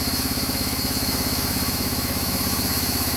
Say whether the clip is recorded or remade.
remade